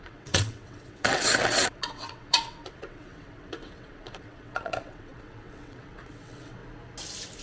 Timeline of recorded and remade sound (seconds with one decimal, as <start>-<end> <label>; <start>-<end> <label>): 0.0-6.6 remade; 6.6-7.4 recorded